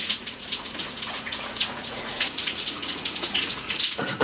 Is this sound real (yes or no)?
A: no